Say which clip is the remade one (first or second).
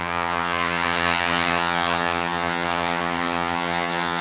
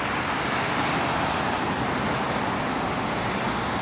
first